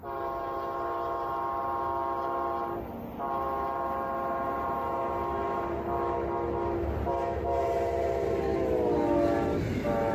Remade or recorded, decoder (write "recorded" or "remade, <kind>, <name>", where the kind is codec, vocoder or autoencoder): recorded